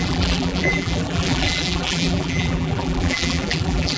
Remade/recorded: remade